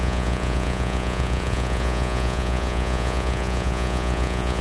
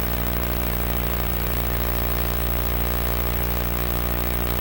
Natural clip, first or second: second